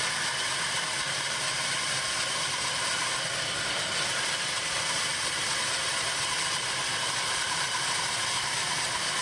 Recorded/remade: recorded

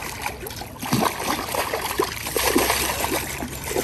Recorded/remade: recorded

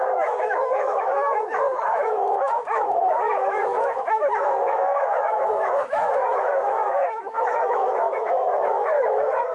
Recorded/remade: remade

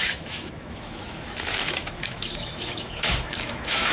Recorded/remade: remade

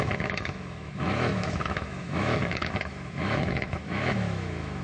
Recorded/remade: remade